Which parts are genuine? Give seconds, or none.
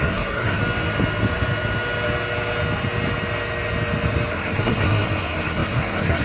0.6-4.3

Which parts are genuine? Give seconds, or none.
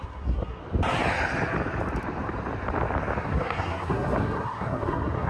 0.6-3.2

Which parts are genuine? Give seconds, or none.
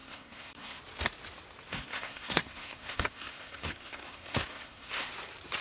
0.8-1.7; 5.1-5.6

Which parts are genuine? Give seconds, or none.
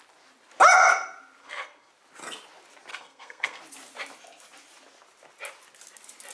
0.0-1.4; 1.9-2.9; 3.6-6.3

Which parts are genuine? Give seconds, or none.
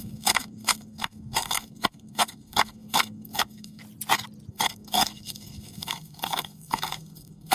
3.8-4.5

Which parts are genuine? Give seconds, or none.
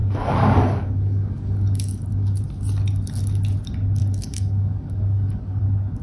2.4-4.0; 5.6-6.0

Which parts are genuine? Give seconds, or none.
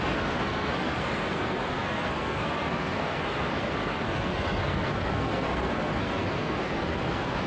none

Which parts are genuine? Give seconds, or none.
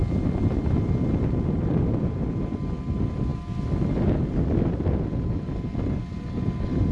0.0-6.9